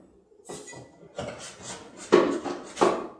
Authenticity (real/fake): real